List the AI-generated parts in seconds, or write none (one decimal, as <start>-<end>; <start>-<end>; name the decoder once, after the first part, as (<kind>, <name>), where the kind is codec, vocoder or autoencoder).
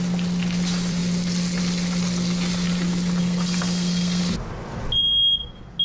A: 3.2-4.2 (codec, SNAC)